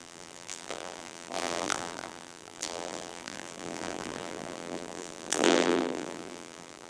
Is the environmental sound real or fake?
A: fake